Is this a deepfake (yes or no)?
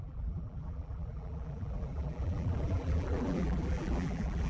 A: yes